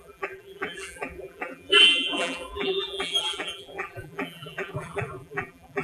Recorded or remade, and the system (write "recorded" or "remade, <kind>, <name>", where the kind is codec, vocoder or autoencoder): remade, vocoder, BigVGAN v2